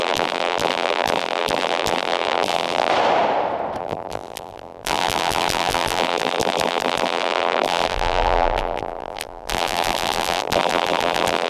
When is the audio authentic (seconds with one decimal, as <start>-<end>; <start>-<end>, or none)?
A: 2.9-3.8